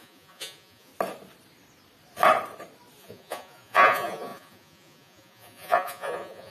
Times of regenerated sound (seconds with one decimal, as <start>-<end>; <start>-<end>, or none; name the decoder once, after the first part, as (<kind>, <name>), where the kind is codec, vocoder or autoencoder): 0.0-0.9 (vocoder, Vocos); 3.0-6.5